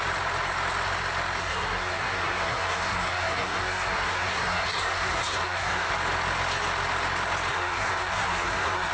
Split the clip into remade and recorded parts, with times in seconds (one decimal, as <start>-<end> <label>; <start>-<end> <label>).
0.0-1.4 recorded; 1.4-5.9 remade; 5.9-7.5 recorded; 7.5-8.9 remade